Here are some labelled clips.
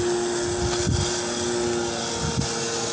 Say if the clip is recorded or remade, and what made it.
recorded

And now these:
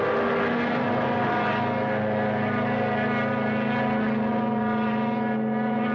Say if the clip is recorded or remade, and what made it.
recorded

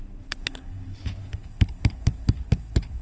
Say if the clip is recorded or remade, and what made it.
remade, codec, HILCodec